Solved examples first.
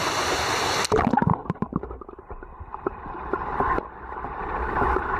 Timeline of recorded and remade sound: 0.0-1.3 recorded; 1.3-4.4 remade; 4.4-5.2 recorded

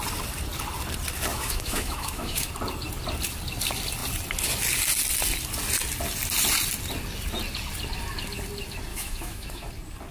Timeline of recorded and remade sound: 0.0-1.3 recorded; 1.3-2.5 remade; 2.5-8.9 recorded; 8.9-9.7 remade; 9.7-10.1 recorded

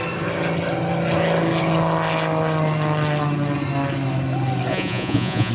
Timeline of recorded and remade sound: 0.0-4.7 recorded; 4.7-5.5 remade

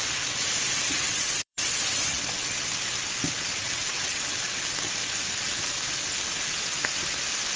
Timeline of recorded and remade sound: 0.0-0.8 recorded; 0.8-2.6 remade; 2.6-3.5 recorded; 3.5-4.2 remade; 4.2-7.6 recorded